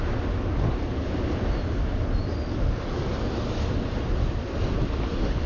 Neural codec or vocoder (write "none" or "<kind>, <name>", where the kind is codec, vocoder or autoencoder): none